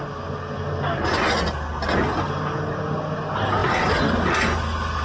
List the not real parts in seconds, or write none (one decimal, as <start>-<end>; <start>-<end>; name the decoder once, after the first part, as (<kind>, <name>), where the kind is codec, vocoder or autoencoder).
none